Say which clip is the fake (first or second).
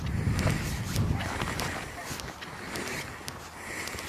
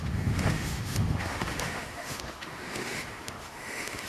second